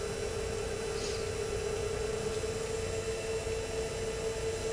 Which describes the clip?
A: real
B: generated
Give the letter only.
A